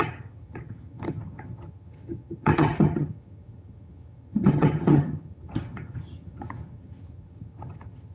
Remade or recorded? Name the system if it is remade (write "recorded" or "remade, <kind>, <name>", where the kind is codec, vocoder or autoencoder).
remade, vocoder, HiFi-GAN